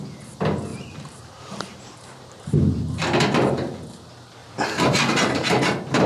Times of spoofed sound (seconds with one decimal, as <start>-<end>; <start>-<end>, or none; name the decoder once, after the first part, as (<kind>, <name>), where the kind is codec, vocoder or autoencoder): 0.7-3.2 (vocoder, BigVGAN v2); 4.4-5.5